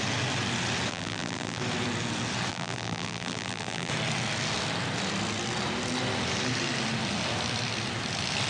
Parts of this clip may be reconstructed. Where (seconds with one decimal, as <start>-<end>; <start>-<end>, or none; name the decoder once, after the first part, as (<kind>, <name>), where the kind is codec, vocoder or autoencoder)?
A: 0.9-1.6 (vocoder, BigVGAN v2); 2.5-3.9